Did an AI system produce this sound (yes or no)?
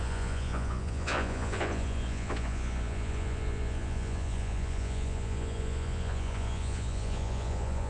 yes